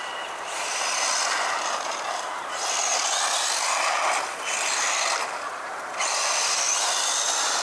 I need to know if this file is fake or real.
real